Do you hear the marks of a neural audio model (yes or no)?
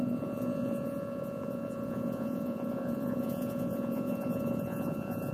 yes